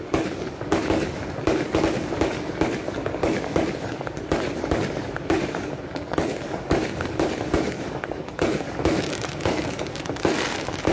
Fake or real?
fake